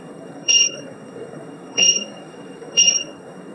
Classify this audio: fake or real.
fake